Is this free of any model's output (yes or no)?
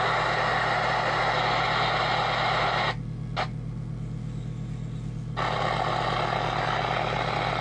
yes